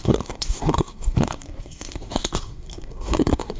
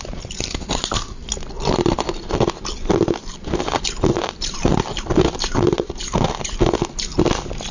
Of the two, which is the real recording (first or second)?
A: second